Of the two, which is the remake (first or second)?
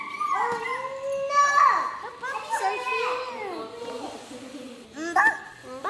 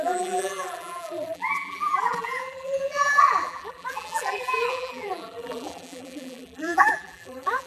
second